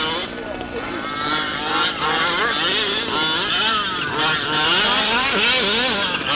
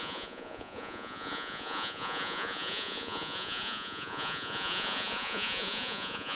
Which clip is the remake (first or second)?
second